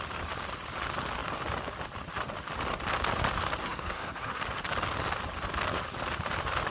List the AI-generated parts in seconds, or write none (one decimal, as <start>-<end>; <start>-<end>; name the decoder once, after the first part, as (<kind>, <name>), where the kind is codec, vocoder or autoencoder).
3.6-4.4 (codec, SNAC)

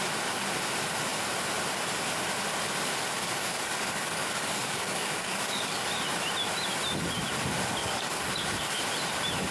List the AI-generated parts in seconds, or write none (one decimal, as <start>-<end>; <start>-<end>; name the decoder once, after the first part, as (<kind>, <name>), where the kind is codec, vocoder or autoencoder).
3.2-5.9 (codec, DAC); 7.8-8.8